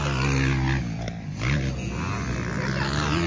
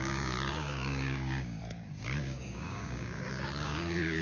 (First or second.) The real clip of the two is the first